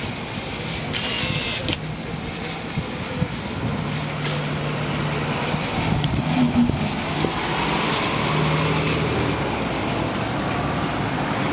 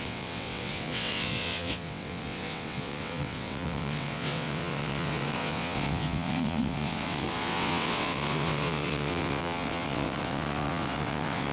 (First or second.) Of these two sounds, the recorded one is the first